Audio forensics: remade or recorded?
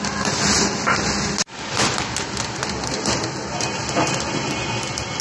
recorded